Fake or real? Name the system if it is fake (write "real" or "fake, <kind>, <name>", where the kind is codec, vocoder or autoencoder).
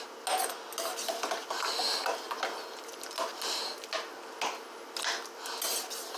real